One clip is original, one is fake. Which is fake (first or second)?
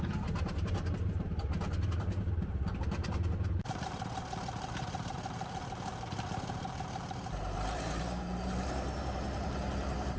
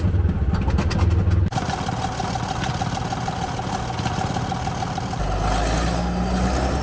first